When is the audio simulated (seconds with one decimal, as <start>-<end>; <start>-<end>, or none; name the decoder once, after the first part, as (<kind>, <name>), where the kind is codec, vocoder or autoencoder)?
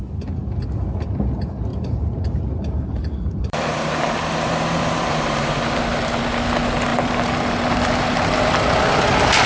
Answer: 1.7-5.5 (vocoder, BigVGAN v2)